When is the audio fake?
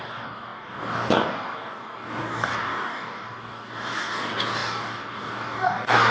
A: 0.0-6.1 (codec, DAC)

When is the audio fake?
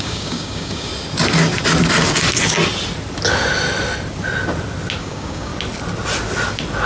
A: 0.0-0.9 (codec, DAC); 5.0-5.5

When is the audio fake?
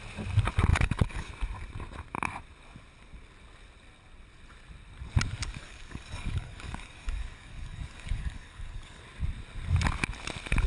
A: 0.7-1.3 (codec, DAC); 5.4-9.0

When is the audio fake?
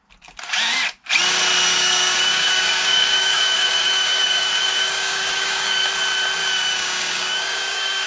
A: 1.7-5.9 (codec, DAC); 6.4-8.1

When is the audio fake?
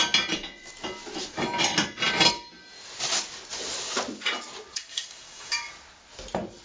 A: 4.7-5.7 (codec, DAC)